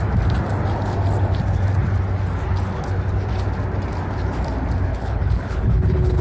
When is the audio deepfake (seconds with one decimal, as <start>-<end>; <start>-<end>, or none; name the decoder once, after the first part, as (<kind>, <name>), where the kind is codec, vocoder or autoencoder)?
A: 4.9-6.2 (codec, HILCodec)